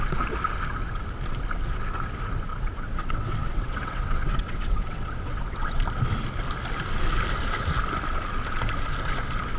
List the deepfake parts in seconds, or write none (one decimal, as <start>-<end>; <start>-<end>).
2.5-5.8